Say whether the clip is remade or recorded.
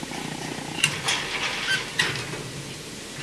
recorded